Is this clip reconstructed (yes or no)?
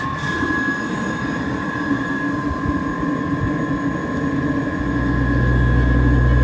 no